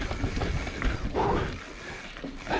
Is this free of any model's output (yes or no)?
yes